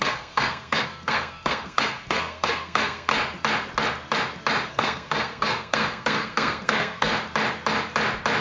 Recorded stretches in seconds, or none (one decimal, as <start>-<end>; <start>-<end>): 3.1-4.7; 7.1-8.4